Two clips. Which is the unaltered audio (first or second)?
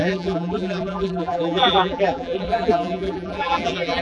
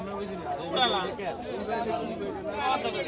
second